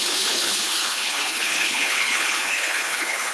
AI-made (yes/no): yes